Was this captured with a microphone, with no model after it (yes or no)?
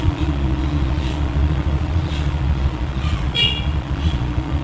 no